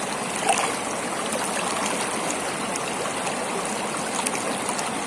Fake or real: real